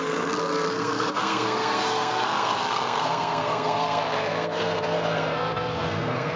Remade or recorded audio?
remade